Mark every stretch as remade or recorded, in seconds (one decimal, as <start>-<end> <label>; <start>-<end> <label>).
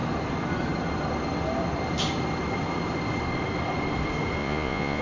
0.0-4.4 recorded; 4.4-5.0 remade